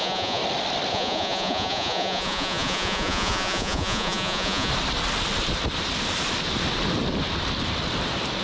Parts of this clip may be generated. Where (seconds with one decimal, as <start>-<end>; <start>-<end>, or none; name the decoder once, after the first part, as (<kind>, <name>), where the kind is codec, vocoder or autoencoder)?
0.0-0.4 (vocoder, Vocos); 0.9-4.7